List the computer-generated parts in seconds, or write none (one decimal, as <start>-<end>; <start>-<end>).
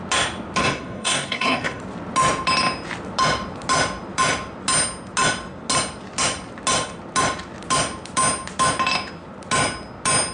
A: 0.6-1.8